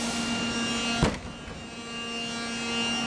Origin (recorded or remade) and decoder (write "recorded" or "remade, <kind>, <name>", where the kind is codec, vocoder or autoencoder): recorded